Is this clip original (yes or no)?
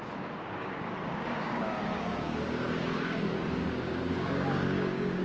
no